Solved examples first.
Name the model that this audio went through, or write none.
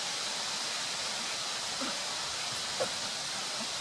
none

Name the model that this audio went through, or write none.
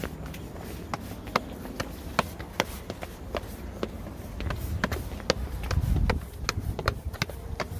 none